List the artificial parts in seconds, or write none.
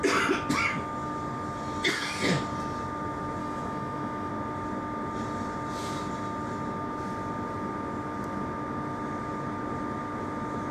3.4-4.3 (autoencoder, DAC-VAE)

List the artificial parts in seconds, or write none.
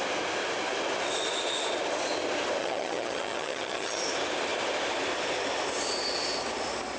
2.6-4.0 (vocoder, HiFi-GAN)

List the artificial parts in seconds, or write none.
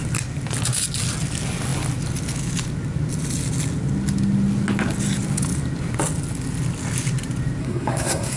7.6-8.4 (codec, SNAC)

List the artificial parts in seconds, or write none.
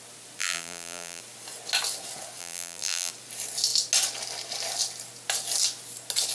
0.4-1.2 (vocoder, BigVGAN v2); 2.4-3.1